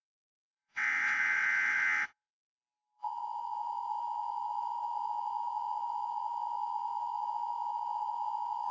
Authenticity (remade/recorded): remade